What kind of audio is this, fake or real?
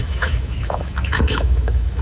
fake